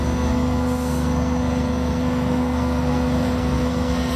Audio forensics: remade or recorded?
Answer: remade